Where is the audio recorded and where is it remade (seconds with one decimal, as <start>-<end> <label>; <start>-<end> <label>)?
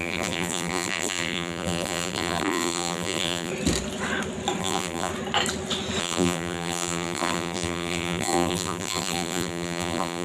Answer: 0.0-3.5 remade; 3.5-4.6 recorded; 4.6-5.1 remade; 5.1-6.0 recorded; 6.0-10.2 remade